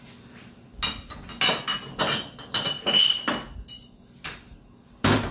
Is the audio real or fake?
real